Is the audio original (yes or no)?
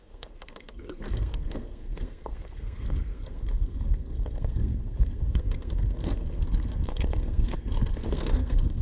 no